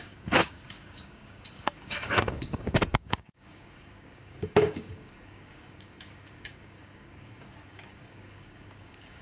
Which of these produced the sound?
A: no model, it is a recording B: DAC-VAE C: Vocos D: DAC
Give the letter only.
D